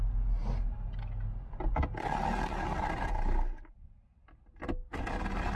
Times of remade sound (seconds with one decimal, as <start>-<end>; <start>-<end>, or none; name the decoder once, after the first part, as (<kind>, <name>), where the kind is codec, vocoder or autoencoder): none

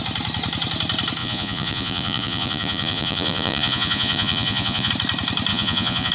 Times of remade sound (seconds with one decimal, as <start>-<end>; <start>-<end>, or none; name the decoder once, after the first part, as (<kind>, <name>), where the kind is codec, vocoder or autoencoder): 1.2-4.9 (vocoder, Vocos); 5.5-6.1

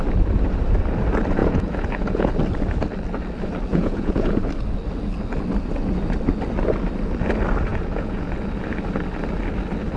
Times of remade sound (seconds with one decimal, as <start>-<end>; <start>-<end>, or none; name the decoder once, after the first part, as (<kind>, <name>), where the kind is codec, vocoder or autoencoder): 1.4-2.3 (vocoder, Vocos); 3.7-4.4; 7.7-8.3

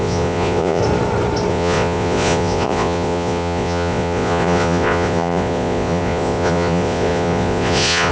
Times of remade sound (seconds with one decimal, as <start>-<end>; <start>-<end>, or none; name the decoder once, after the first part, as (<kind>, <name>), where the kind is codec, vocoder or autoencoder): 0.0-0.8 (vocoder, Vocos); 1.5-8.1

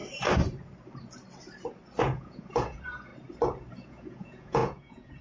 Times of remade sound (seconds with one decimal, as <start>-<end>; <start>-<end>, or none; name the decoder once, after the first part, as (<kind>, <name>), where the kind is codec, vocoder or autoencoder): 2.0-3.1 (vocoder, Vocos); 3.7-5.2